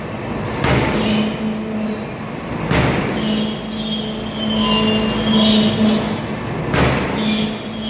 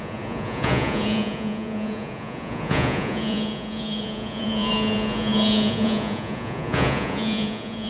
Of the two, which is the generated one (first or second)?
second